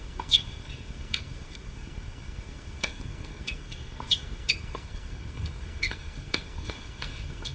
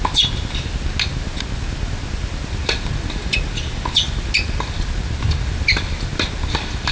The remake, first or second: first